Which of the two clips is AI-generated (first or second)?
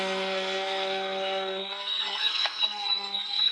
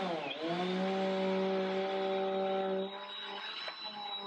first